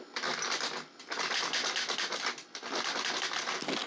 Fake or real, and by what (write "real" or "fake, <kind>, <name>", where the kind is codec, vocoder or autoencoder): real